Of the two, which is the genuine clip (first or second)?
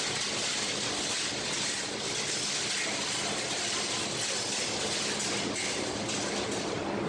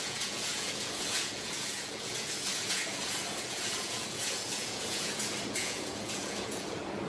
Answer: first